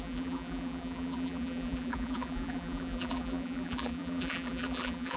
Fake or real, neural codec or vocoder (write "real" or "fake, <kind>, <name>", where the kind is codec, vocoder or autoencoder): fake, vocoder, BigVGAN v2